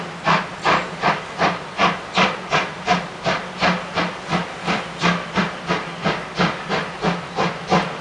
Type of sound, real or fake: real